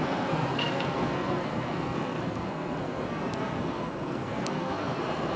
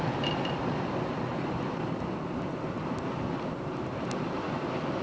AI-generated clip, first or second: first